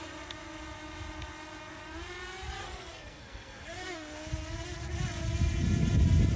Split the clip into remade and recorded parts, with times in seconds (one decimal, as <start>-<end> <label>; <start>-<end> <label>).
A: 0.0-2.6 recorded; 2.6-4.3 remade; 4.3-6.4 recorded